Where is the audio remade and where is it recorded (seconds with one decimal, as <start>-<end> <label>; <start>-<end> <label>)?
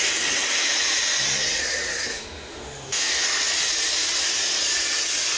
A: 0.0-2.1 recorded; 2.1-3.1 remade; 3.1-5.4 recorded